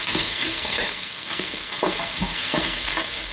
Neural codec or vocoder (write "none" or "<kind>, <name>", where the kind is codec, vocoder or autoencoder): codec, SNAC